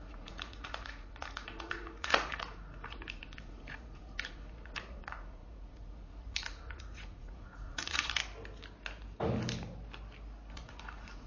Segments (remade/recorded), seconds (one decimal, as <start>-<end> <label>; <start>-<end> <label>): 0.0-8.2 remade; 8.2-10.5 recorded; 10.5-11.3 remade